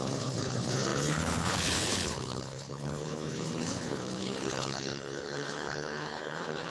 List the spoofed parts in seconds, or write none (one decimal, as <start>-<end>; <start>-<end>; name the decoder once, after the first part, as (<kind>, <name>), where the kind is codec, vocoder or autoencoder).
0.0-6.7 (codec, HILCodec)